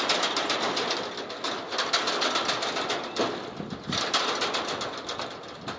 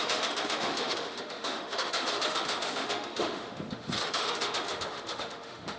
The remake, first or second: second